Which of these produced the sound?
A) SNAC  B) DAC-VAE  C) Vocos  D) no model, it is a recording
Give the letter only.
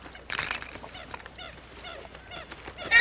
D